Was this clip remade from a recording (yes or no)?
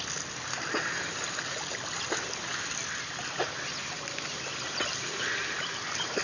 no